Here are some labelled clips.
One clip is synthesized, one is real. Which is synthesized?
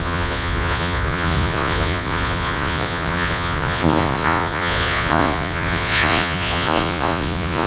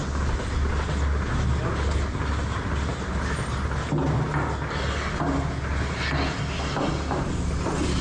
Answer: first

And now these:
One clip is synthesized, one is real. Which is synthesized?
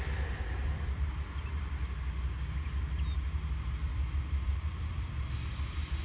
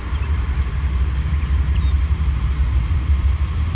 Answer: second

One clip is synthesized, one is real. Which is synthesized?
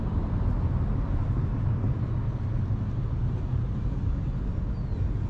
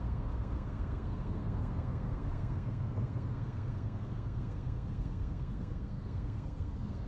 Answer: second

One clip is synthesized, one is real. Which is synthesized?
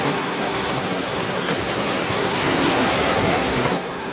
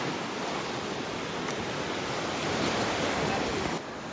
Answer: first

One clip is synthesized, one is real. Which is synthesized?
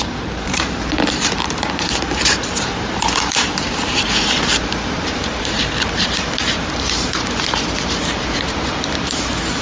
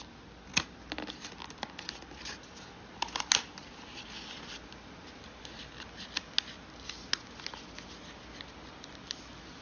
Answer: first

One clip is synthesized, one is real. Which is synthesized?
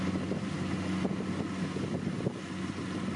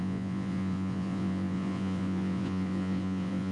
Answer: second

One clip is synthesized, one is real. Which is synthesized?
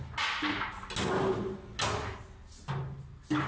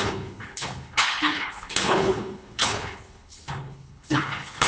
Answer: second